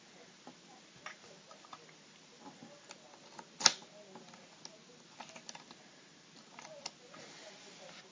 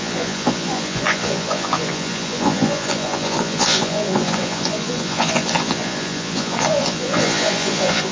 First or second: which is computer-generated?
second